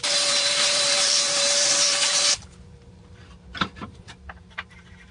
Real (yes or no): no